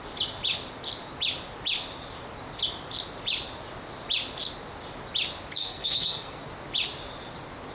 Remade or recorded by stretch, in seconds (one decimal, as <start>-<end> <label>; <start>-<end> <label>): 0.0-5.6 recorded; 5.6-6.4 remade; 6.4-7.7 recorded